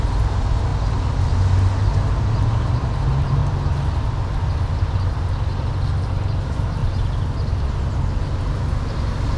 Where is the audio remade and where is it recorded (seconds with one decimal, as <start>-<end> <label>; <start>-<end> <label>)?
0.0-0.7 remade; 0.7-2.4 recorded; 2.4-3.4 remade; 3.4-6.0 recorded; 6.0-6.8 remade; 6.8-8.8 recorded; 8.8-9.4 remade